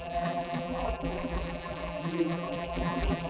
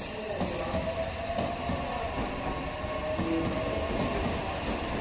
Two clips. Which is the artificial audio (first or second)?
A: first